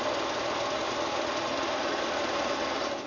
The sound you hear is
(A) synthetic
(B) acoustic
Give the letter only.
B